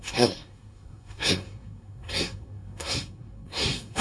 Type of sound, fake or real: fake